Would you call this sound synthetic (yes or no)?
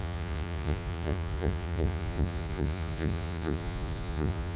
yes